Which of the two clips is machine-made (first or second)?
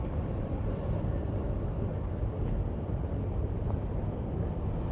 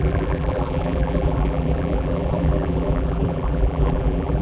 second